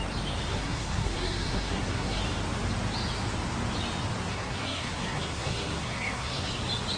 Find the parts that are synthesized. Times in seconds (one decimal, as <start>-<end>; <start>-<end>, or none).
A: 0.5-2.2; 4.3-6.5